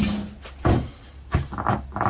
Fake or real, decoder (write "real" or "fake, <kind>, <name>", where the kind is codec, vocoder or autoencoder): real